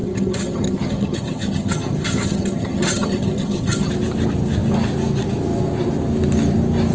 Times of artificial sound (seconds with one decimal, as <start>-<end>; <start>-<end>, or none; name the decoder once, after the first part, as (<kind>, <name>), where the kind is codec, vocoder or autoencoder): 0.0-3.9 (vocoder, HiFi-GAN)